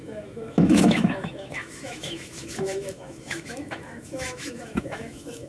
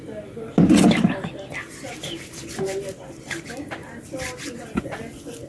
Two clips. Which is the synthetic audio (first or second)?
first